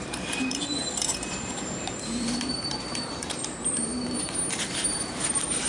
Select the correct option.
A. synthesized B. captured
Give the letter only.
A